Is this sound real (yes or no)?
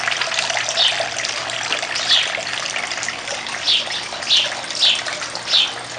yes